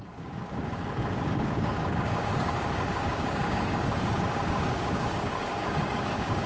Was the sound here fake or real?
fake